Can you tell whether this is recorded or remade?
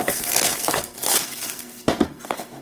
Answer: remade